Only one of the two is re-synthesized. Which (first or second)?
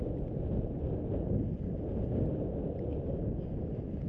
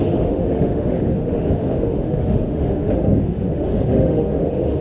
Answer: second